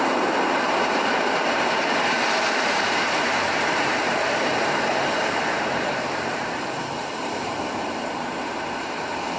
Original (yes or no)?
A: no